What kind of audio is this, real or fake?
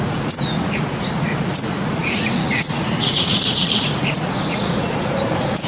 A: fake